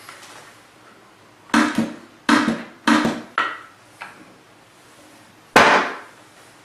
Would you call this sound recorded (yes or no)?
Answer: yes